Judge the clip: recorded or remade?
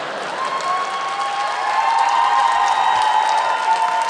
recorded